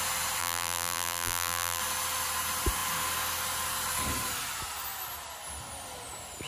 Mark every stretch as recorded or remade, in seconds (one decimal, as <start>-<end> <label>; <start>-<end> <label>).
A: 0.0-0.4 recorded; 0.4-1.8 remade; 1.8-6.5 recorded